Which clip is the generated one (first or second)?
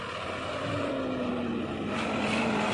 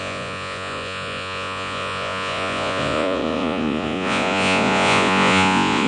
second